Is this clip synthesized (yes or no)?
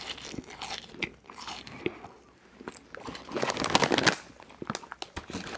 no